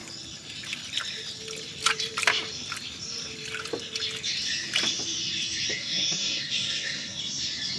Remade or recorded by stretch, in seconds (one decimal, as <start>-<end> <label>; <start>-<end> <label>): 0.0-5.7 recorded; 5.7-7.2 remade; 7.2-7.8 recorded